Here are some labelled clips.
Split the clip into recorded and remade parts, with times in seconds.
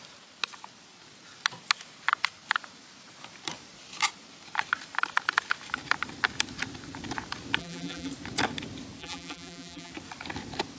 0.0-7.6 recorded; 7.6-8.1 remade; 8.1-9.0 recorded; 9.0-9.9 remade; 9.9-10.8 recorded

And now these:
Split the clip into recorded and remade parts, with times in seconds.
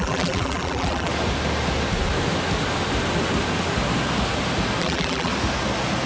0.0-1.1 remade; 1.1-4.8 recorded; 4.8-5.3 remade; 5.3-6.1 recorded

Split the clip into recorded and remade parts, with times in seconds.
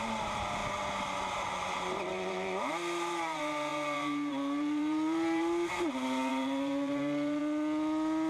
0.0-0.6 remade; 0.6-1.3 recorded; 1.3-7.4 remade; 7.4-8.3 recorded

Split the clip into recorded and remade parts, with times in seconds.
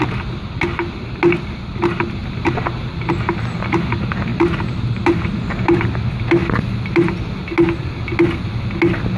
0.0-4.3 recorded; 4.3-5.2 remade; 5.2-9.2 recorded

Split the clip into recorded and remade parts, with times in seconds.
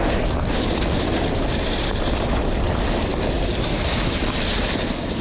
0.0-5.2 recorded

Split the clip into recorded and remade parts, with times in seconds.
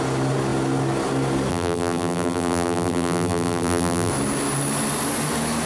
0.0-1.5 recorded; 1.5-4.1 remade; 4.1-5.7 recorded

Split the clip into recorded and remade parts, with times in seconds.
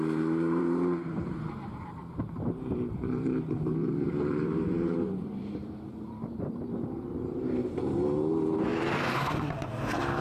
0.0-10.2 remade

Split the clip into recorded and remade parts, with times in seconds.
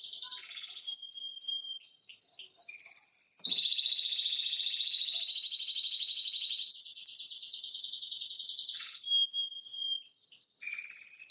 0.0-1.8 recorded; 1.8-5.3 remade; 5.3-11.3 recorded